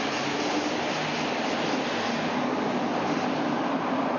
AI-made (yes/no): no